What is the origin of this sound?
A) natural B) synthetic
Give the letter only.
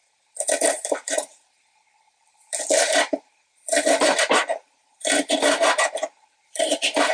B